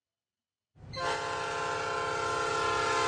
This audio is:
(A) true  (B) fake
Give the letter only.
A